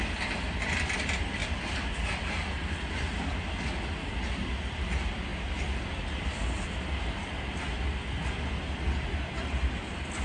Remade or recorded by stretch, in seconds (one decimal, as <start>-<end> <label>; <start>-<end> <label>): 0.0-10.2 recorded